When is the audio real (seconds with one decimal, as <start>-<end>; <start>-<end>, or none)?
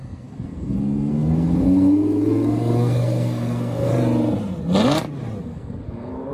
3.9-5.4